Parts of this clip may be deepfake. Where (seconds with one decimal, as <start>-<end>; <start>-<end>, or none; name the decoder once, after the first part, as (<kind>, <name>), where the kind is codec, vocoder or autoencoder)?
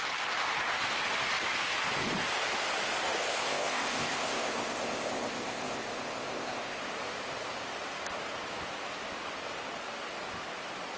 3.2-6.8 (codec, ZipCodec)